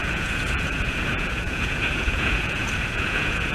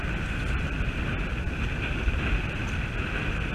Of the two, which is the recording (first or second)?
second